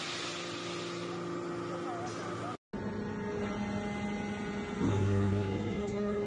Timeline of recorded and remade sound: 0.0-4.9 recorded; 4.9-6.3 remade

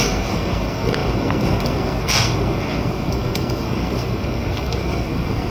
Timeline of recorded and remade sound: 0.0-5.5 remade

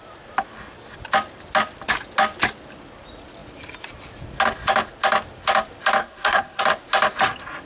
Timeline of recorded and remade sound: 0.0-6.0 recorded; 6.0-6.6 remade; 6.6-7.7 recorded

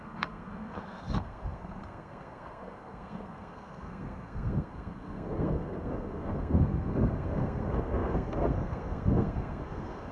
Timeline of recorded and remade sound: 0.0-10.1 remade

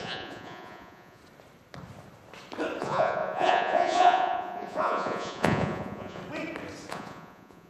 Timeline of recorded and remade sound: 0.0-1.2 remade; 1.2-2.8 recorded; 2.8-6.2 remade; 6.2-6.9 recorded; 6.9-7.7 remade

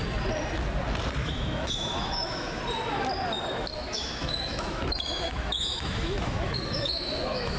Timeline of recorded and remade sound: 0.0-1.2 recorded; 1.2-2.6 remade; 2.6-3.5 recorded; 3.5-7.6 remade